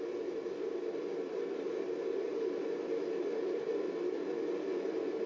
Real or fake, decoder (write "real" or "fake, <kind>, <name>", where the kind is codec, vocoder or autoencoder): real